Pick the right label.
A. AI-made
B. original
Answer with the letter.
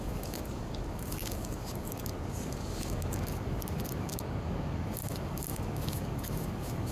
A